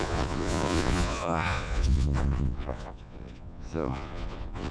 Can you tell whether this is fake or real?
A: fake